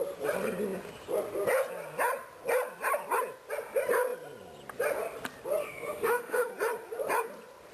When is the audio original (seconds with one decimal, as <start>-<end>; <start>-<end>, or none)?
0.0-5.6; 6.5-7.7